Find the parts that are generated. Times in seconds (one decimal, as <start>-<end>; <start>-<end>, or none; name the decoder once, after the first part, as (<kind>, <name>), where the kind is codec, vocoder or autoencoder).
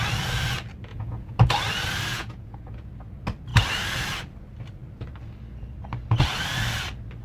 0.9-1.5 (vocoder, Vocos); 2.1-2.9